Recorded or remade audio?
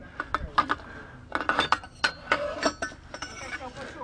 recorded